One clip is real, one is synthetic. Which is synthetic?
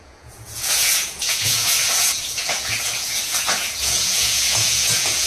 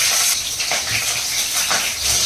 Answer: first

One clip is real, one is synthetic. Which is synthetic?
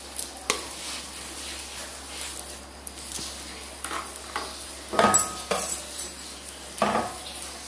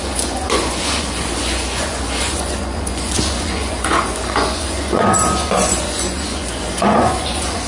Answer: second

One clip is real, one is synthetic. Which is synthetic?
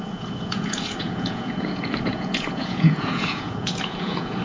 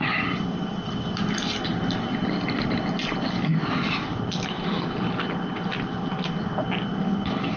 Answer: first